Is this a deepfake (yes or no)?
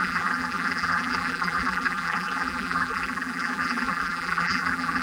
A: yes